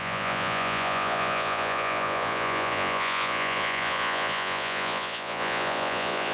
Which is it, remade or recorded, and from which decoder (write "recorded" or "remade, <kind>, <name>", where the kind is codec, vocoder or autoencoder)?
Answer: remade, vocoder, Vocos